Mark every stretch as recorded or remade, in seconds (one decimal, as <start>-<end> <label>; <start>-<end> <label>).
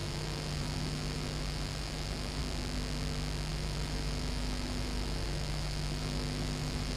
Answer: 0.0-2.4 remade; 2.4-3.5 recorded; 3.5-7.0 remade